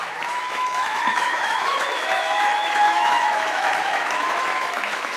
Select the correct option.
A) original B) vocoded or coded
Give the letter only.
B